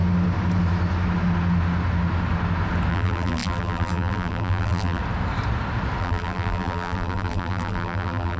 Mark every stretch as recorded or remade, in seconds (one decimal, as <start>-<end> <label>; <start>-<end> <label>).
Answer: 0.0-2.9 recorded; 2.9-5.0 remade; 5.0-6.0 recorded; 6.0-8.4 remade